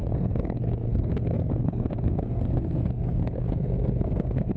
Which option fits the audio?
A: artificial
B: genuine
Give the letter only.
A